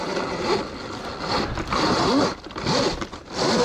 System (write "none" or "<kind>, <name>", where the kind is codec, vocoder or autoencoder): none